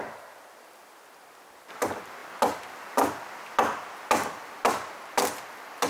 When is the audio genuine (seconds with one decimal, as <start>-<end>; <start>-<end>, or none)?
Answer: 0.0-5.9